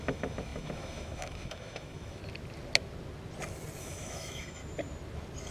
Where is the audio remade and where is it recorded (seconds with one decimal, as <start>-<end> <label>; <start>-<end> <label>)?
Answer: 0.0-2.2 remade; 2.2-3.8 recorded; 3.8-4.6 remade; 4.6-5.5 recorded